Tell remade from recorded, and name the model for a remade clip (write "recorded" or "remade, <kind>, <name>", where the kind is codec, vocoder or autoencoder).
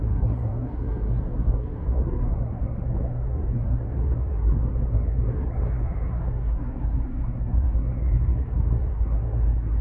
remade, codec, SNAC